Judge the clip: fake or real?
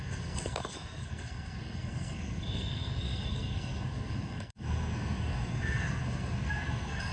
fake